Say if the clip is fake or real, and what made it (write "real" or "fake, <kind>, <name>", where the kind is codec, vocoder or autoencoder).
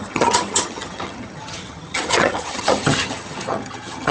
fake, vocoder, HiFi-GAN